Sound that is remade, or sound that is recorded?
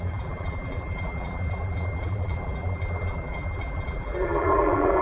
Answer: remade